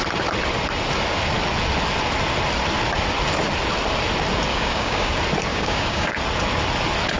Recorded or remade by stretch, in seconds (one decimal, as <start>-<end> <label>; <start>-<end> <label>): 0.0-4.5 recorded; 4.5-5.1 remade; 5.1-5.5 recorded; 5.5-6.2 remade; 6.2-7.2 recorded

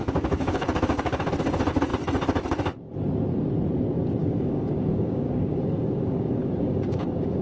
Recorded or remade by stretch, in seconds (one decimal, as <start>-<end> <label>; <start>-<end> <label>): 0.0-1.3 remade; 1.3-4.2 recorded; 4.2-7.4 remade

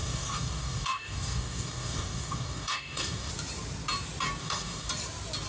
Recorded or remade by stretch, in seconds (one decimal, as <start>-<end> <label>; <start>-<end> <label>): 0.0-3.3 remade; 3.3-4.4 recorded; 4.4-4.9 remade; 4.9-5.5 recorded

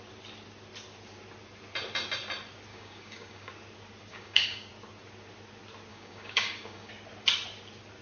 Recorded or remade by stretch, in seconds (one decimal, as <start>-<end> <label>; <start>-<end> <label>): 0.0-2.7 recorded; 2.7-3.5 remade; 3.5-4.1 recorded; 4.1-4.7 remade; 4.7-5.9 recorded; 5.9-6.9 remade; 6.9-8.0 recorded